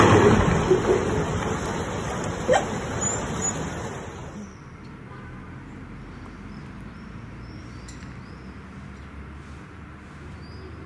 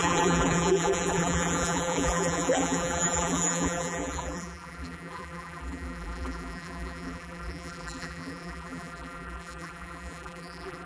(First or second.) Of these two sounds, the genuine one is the first